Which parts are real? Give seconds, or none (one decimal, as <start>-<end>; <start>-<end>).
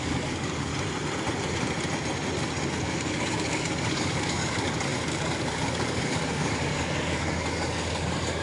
0.7-2.7